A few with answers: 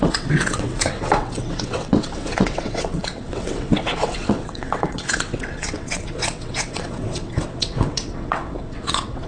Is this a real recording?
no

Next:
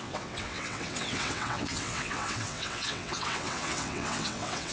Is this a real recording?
no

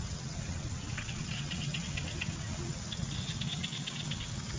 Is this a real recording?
no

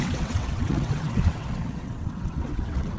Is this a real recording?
no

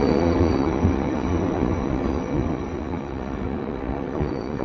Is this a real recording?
no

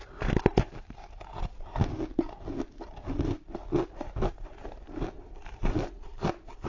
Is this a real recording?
yes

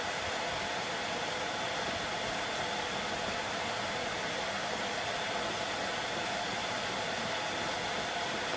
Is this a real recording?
yes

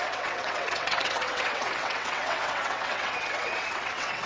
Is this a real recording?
no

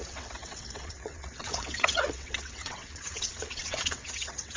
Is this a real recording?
no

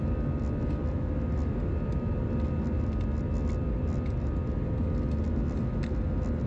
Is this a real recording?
yes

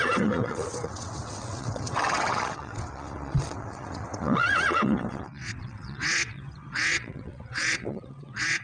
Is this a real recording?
no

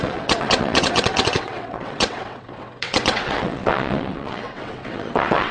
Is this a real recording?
no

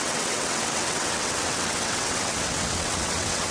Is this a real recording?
no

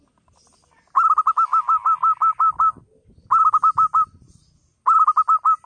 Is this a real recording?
yes